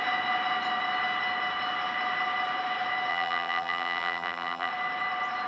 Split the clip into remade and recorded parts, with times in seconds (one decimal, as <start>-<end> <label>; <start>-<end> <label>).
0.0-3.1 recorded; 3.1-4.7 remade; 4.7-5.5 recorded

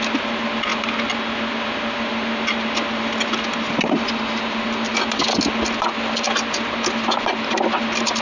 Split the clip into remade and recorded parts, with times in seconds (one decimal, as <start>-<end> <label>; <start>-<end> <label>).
0.0-8.2 recorded

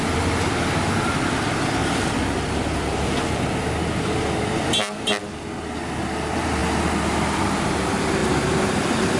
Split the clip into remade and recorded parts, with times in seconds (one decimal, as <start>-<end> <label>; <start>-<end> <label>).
0.0-1.8 recorded; 1.8-3.6 remade; 3.6-8.2 recorded; 8.2-9.2 remade